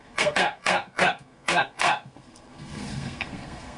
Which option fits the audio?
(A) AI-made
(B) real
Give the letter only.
A